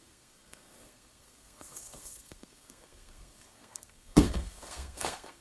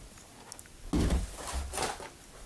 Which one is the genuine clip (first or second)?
second